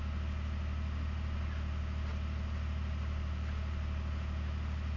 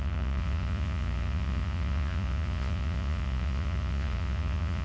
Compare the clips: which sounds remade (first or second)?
second